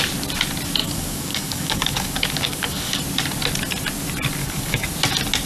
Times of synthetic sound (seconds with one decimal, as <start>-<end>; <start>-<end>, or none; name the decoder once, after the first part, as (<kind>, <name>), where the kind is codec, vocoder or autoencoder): 0.8-3.0 (codec, DAC); 4.4-4.9